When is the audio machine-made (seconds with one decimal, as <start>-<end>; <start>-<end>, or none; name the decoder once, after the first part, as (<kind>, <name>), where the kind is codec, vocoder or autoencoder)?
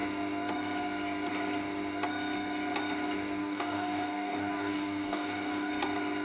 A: 3.4-5.7 (codec, DAC)